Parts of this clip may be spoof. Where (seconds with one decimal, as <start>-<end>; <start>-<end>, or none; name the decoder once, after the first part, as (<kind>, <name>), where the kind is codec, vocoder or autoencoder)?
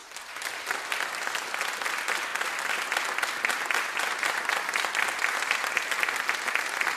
none